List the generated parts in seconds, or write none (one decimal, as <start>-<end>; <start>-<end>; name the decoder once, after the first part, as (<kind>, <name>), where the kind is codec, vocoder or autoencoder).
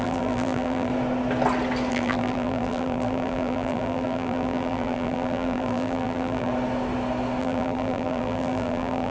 0.0-0.9 (vocoder, BigVGAN v2); 1.9-6.5; 7.4-9.1